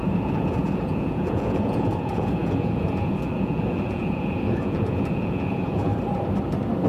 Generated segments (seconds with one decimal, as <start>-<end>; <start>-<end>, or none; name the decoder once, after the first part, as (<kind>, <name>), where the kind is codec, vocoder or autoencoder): 0.0-5.9 (vocoder, Vocos)